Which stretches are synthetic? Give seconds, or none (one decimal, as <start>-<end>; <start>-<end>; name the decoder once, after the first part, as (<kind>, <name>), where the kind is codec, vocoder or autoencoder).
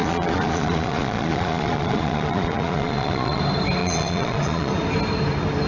0.0-3.4 (vocoder, Vocos); 3.8-4.7